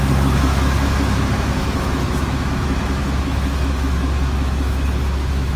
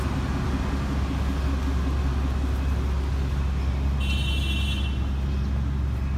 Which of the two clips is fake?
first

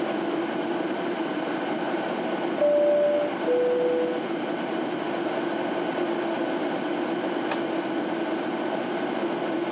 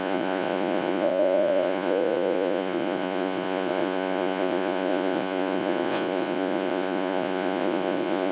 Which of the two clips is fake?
second